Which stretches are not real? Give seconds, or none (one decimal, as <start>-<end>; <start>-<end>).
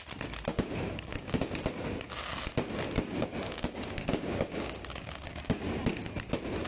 0.5-1.5; 3.1-5.7